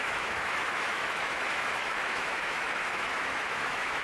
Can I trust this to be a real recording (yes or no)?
no